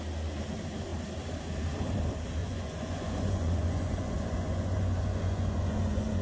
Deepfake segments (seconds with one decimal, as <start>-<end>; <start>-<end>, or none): 2.4-6.2